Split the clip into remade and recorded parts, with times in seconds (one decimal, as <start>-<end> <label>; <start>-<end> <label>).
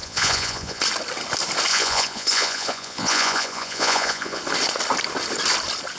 0.0-0.8 remade; 0.8-1.7 recorded; 1.7-4.4 remade; 4.4-6.0 recorded